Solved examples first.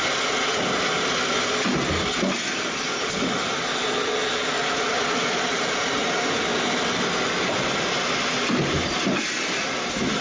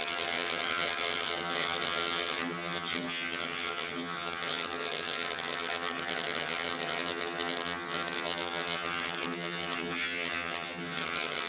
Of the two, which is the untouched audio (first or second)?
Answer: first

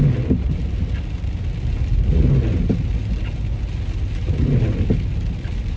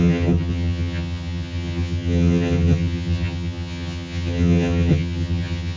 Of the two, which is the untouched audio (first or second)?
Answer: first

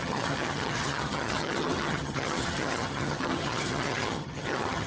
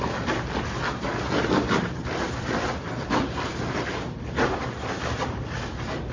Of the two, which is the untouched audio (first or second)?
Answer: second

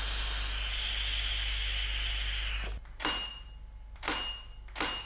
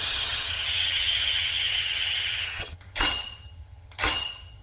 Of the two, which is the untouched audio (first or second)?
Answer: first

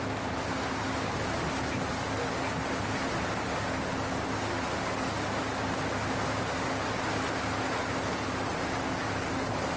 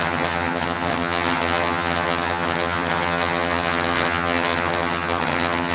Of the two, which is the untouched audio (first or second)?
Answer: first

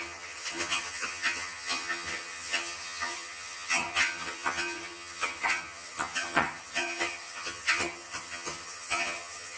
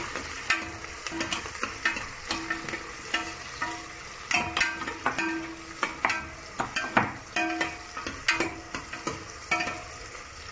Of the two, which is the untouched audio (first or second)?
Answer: second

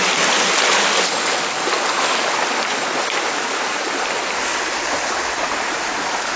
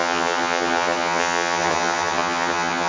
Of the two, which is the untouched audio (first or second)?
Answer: first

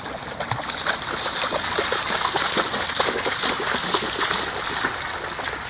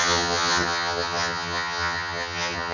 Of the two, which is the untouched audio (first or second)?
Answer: first